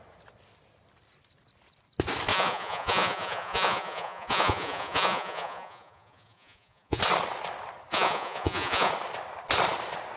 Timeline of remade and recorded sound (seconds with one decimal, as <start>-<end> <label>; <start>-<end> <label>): 0.0-2.3 recorded; 2.3-7.0 remade; 7.0-7.9 recorded; 7.9-8.9 remade; 8.9-10.2 recorded